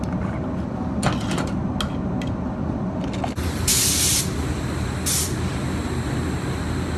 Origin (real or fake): real